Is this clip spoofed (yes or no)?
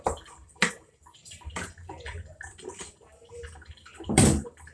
yes